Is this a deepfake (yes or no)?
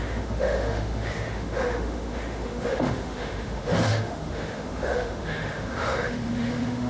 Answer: yes